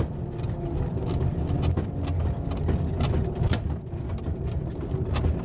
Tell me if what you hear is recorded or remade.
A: recorded